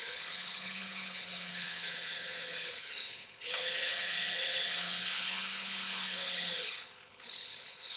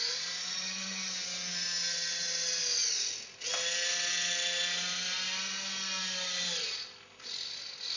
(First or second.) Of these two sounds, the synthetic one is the first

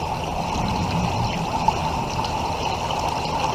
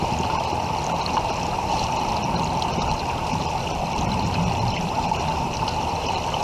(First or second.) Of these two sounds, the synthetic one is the second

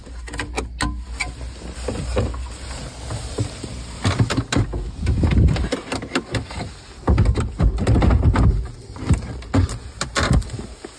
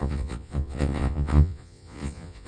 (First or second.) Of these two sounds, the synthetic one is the second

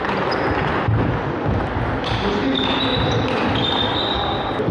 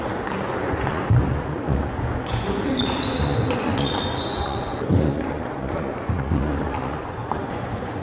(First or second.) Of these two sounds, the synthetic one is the second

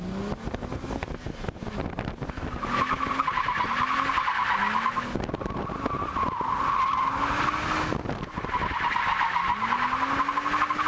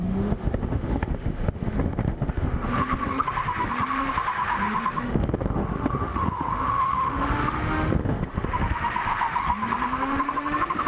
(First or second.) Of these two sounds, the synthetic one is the second